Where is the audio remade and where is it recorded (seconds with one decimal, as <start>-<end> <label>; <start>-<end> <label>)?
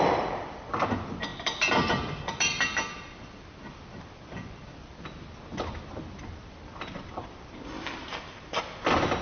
0.0-9.2 remade